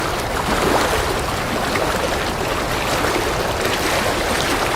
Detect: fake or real real